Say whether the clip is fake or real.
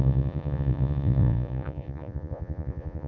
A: fake